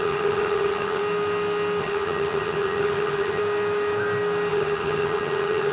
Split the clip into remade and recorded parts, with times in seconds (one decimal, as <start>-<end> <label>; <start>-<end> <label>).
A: 0.0-1.0 remade; 1.0-1.8 recorded; 1.8-3.4 remade; 3.4-4.5 recorded; 4.5-5.7 remade